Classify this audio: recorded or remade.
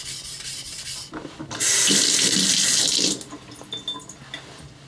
recorded